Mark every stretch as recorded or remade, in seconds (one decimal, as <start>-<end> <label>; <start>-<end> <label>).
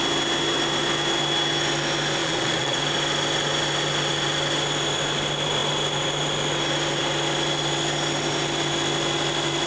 0.0-2.2 recorded; 2.2-2.8 remade; 2.8-9.7 recorded